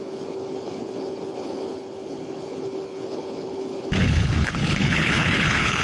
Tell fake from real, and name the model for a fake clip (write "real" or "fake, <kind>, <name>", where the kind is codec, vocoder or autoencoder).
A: fake, codec, HILCodec